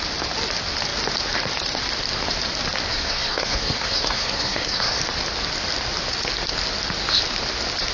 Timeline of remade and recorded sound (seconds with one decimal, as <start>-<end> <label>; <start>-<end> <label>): 0.0-2.9 recorded; 2.9-5.0 remade; 5.0-7.9 recorded